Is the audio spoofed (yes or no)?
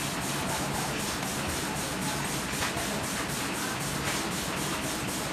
no